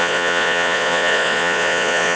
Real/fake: fake